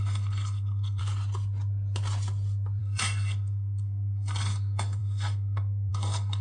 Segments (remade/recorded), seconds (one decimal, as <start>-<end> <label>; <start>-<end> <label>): 0.0-1.0 remade; 1.0-2.8 recorded; 2.8-6.4 remade